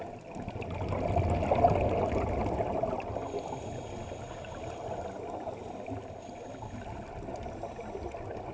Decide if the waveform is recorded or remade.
recorded